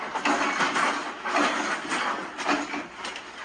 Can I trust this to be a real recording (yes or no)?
yes